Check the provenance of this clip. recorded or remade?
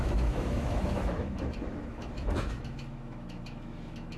remade